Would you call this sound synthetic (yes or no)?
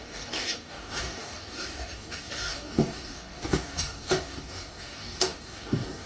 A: yes